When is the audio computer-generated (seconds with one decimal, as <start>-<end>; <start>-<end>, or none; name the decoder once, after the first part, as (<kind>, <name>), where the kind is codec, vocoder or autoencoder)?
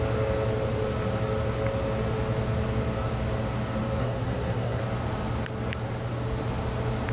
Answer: 4.0-4.8 (codec, SNAC)